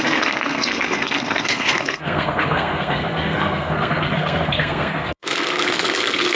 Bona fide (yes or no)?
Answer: no